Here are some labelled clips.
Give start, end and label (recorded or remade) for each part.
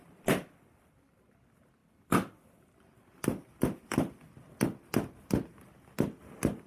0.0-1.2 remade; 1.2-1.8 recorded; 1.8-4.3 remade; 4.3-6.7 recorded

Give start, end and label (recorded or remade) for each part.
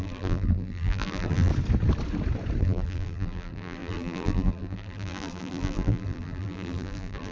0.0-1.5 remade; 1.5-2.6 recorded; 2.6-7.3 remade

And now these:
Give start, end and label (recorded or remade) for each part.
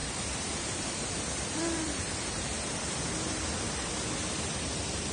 0.0-3.1 remade; 3.1-5.1 recorded